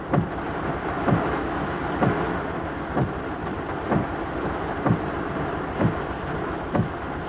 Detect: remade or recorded recorded